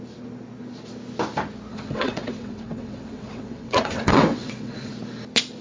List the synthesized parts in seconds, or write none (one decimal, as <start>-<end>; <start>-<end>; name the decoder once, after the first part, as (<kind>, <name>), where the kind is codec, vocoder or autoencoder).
1.7-4.9 (vocoder, WaveNeXt)